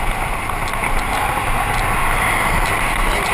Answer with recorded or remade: recorded